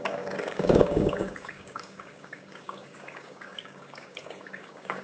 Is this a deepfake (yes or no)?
yes